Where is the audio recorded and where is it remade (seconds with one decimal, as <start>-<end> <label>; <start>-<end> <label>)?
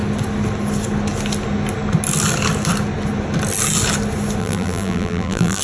0.0-4.4 recorded; 4.4-5.6 remade